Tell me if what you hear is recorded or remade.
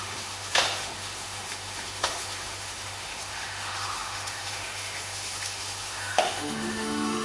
remade